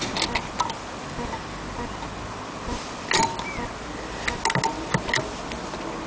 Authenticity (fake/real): real